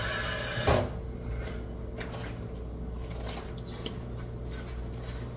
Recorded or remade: recorded